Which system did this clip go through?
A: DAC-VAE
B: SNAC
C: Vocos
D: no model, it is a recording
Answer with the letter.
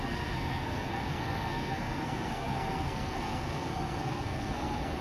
B